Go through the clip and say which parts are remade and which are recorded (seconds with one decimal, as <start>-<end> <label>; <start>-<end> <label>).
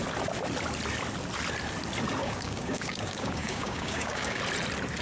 0.0-2.2 recorded; 2.2-4.4 remade; 4.4-5.0 recorded